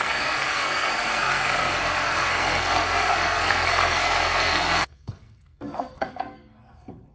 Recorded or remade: remade